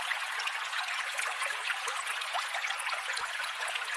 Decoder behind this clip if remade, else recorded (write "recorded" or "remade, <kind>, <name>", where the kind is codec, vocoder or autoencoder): remade, vocoder, Vocos